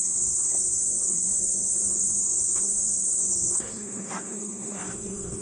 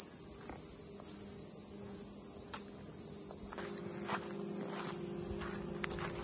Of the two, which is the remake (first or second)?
first